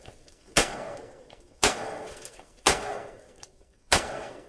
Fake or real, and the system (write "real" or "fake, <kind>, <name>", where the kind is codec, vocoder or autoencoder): fake, codec, SNAC